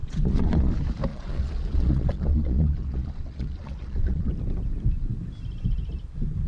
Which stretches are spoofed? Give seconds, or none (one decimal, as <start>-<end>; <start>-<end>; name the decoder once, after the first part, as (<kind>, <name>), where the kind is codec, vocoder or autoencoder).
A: 0.0-0.7 (vocoder, Vocos); 1.1-4.3